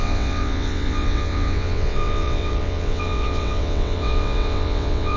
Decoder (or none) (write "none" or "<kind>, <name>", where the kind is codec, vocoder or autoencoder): vocoder, WaveNeXt